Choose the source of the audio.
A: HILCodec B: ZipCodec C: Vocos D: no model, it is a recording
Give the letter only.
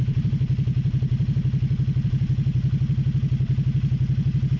D